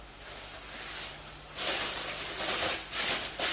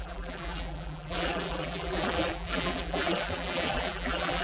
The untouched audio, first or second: first